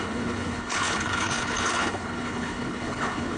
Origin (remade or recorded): remade